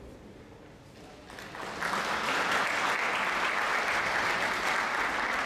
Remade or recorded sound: recorded